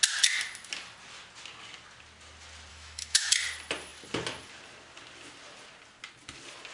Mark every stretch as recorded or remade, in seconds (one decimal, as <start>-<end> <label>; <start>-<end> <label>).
0.0-2.7 recorded; 2.7-3.3 remade; 3.3-6.7 recorded